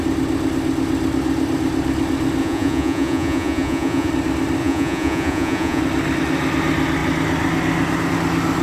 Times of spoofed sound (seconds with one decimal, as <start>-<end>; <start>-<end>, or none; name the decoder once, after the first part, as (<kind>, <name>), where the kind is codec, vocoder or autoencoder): 2.4-4.1 (vocoder, Vocos); 4.6-5.8